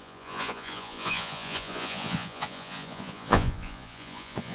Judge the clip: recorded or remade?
remade